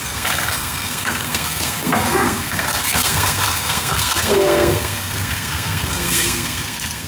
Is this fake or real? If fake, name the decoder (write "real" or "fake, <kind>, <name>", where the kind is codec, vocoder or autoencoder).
fake, codec, SNAC